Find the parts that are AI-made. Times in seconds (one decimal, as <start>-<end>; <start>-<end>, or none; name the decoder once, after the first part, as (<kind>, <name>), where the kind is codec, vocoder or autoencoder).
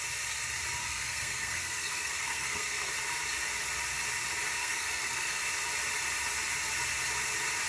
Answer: 0.8-2.9 (codec, SNAC); 4.6-5.4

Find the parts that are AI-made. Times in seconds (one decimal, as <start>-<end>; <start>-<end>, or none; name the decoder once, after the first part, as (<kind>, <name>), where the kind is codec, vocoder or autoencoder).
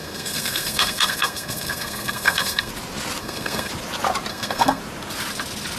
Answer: 0.0-2.7 (codec, SNAC); 3.2-3.7; 4.3-4.8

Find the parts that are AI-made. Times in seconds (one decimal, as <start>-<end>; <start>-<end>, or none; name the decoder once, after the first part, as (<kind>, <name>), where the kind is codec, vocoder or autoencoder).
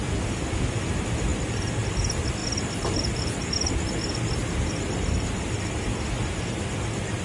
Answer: none